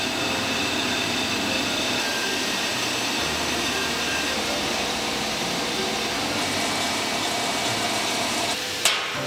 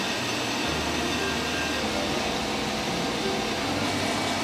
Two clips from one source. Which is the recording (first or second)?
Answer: second